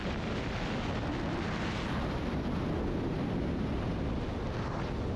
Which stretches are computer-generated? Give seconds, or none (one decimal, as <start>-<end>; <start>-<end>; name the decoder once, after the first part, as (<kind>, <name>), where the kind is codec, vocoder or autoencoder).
none

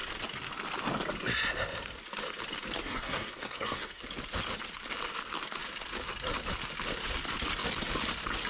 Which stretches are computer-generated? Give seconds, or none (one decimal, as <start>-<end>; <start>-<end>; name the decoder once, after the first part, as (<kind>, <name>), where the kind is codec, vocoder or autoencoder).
2.8-4.0 (codec, SNAC)

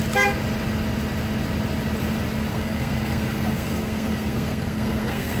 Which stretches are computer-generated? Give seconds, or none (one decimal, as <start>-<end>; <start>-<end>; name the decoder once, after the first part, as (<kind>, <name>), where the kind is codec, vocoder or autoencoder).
2.5-5.4 (codec, SNAC)